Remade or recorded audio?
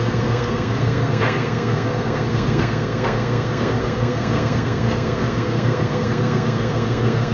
remade